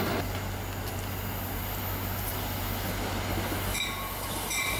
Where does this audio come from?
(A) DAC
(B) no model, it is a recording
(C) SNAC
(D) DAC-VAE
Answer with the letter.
B